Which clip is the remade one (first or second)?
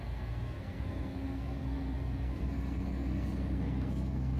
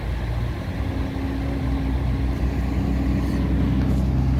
first